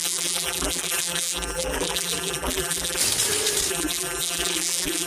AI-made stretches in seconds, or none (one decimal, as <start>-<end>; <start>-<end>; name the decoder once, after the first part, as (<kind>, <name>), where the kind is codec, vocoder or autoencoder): 0.0-3.0 (vocoder, BigVGAN v2); 3.7-5.1